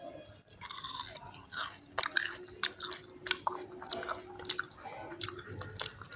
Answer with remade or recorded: recorded